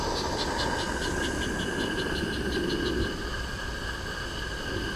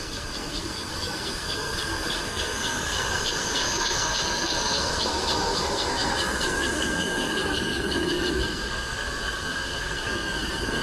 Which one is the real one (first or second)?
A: first